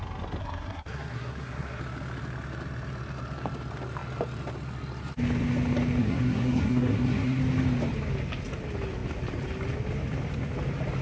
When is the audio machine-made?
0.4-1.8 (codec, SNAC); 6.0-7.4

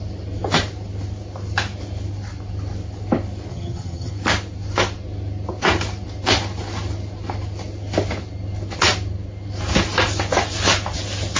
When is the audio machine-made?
3.5-4.1 (vocoder, HiFi-GAN)

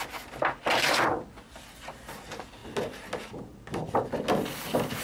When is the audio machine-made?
none

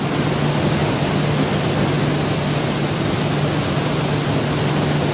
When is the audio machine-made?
none

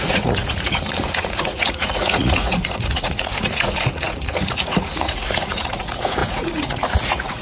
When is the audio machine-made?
0.0-7.4 (vocoder, Vocos)

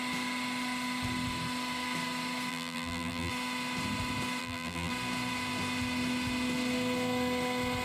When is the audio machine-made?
2.5-3.3 (vocoder, BigVGAN v2); 4.4-4.9